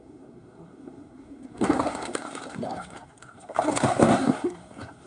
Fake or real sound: fake